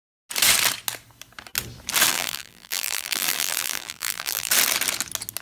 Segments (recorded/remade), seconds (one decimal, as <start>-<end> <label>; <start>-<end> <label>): 0.0-2.1 recorded; 2.1-4.5 remade; 4.5-5.4 recorded